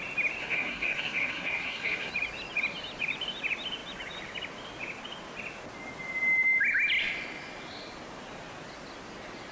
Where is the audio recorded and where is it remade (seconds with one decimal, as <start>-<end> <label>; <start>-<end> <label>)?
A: 0.0-0.4 recorded; 0.4-2.1 remade; 2.1-9.5 recorded